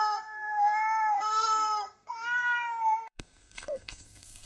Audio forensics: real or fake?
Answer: fake